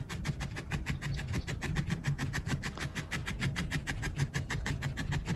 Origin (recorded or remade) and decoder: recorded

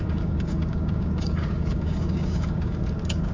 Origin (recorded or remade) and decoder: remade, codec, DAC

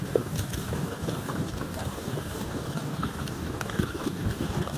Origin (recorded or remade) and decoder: remade, codec, DAC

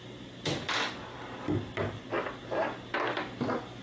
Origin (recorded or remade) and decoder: recorded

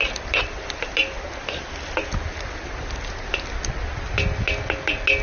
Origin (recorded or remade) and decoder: recorded